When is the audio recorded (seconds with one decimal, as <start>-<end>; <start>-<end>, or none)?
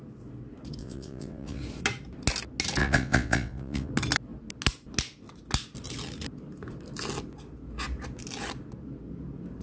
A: 0.0-0.8; 1.6-2.8; 3.9-9.6